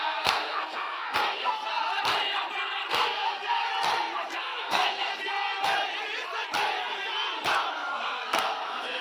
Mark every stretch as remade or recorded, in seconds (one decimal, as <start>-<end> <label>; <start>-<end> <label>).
0.0-1.7 remade; 1.7-2.9 recorded; 2.9-3.7 remade; 3.7-4.3 recorded; 4.3-5.1 remade; 5.1-7.7 recorded; 7.7-9.0 remade